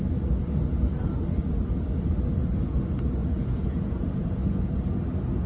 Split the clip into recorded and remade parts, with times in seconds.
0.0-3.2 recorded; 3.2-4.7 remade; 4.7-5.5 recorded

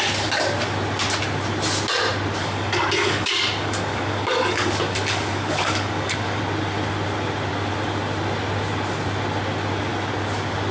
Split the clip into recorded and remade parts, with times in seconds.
0.0-2.4 recorded; 2.4-6.4 remade; 6.4-10.7 recorded

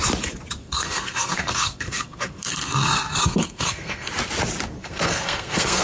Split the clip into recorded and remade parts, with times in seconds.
0.0-0.6 recorded; 0.6-4.1 remade; 4.1-4.8 recorded; 4.8-5.8 remade

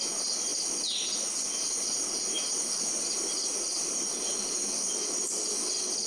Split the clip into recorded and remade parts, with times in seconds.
0.0-6.1 recorded

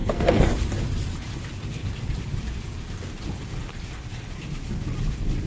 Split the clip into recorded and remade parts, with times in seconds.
0.0-0.5 remade; 0.5-5.5 recorded

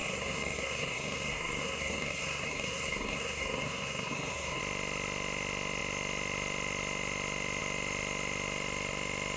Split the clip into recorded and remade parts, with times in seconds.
0.0-4.6 remade; 4.6-9.4 recorded